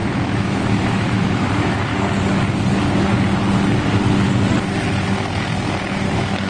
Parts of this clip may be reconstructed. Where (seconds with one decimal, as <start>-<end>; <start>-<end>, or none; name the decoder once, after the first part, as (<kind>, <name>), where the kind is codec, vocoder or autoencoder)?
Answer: 0.0-1.9 (autoencoder, DAC-VAE); 5.8-6.5